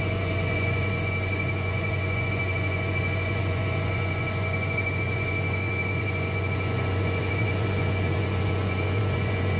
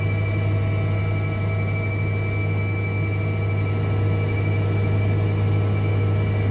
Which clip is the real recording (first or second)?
second